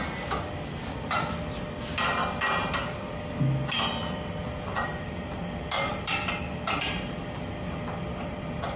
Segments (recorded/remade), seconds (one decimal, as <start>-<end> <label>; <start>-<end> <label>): 0.0-8.8 recorded